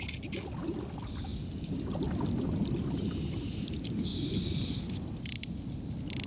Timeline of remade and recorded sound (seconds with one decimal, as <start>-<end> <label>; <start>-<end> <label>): 0.0-1.3 recorded; 1.3-2.6 remade; 2.6-4.1 recorded; 4.1-5.5 remade; 5.5-6.3 recorded